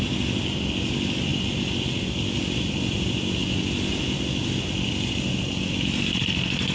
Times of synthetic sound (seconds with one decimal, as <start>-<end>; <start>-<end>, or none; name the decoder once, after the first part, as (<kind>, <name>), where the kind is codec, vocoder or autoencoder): none